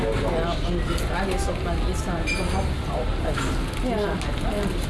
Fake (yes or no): no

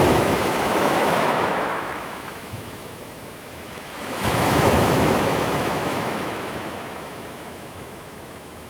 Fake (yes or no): yes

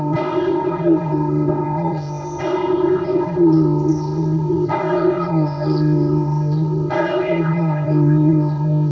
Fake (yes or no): yes